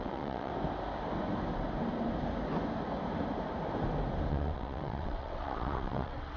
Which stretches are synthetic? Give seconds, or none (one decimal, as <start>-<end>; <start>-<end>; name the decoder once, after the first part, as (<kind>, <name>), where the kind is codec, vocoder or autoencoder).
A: 0.0-0.5 (vocoder, WaveNeXt); 4.3-6.4